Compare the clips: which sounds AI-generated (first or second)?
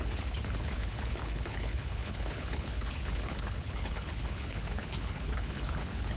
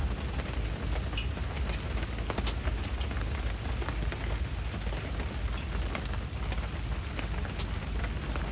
first